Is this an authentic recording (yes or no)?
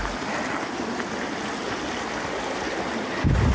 yes